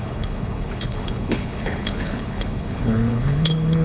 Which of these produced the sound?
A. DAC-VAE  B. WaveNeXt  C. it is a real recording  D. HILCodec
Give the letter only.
D